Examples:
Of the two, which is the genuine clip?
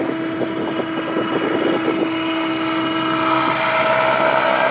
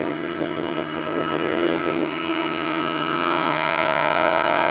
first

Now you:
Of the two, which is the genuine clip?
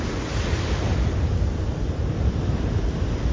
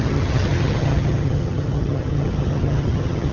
first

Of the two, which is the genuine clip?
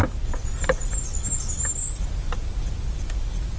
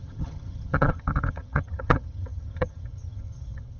first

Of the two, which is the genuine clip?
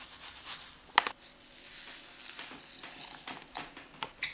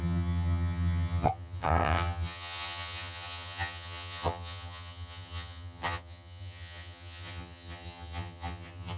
first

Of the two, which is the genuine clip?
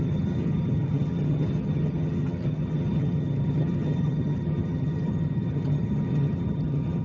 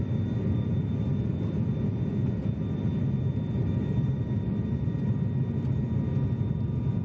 second